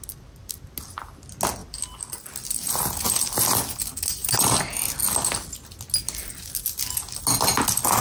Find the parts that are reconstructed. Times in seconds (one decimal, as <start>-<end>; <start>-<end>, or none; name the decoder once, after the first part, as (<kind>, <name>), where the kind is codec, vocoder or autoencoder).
none